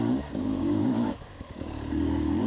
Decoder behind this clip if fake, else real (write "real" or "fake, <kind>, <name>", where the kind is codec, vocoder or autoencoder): fake, codec, DAC